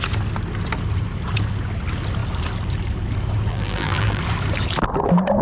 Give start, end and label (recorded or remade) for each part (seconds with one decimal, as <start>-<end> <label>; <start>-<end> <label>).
0.0-3.5 recorded; 3.5-4.2 remade; 4.2-5.4 recorded